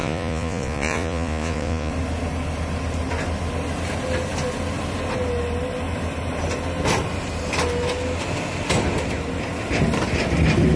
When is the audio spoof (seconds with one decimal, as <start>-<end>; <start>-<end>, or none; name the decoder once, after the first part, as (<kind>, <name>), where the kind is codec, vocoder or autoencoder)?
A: 0.0-1.9 (vocoder, Vocos)